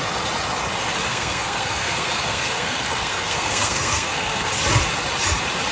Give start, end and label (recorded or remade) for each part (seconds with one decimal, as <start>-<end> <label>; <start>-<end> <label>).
0.0-1.1 recorded; 1.1-4.5 remade; 4.5-5.7 recorded